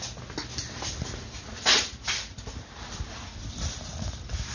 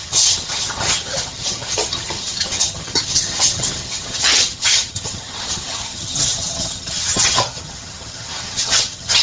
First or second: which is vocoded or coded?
second